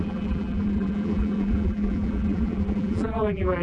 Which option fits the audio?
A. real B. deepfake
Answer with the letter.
B